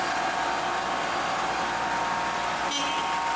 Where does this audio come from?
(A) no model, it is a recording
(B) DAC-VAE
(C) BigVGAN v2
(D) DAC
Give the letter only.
A